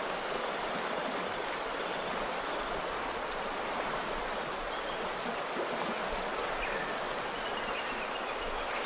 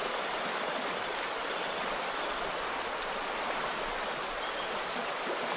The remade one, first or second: second